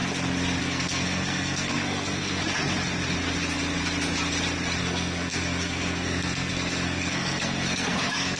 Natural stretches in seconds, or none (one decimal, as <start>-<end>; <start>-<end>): 0.0-0.6; 2.4-4.8